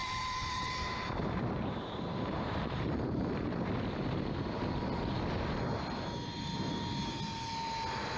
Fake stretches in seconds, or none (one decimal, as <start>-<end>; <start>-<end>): 0.0-3.6